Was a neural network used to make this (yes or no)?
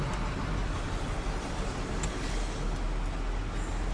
no